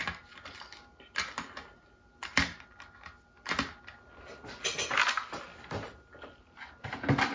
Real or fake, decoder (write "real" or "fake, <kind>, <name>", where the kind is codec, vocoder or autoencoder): real